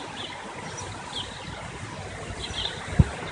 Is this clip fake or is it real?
real